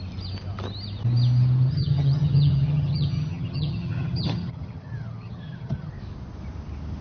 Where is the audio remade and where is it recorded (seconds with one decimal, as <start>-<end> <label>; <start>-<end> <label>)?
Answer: 0.0-1.7 recorded; 1.7-5.9 remade; 5.9-7.0 recorded